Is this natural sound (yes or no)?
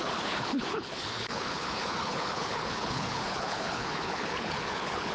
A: no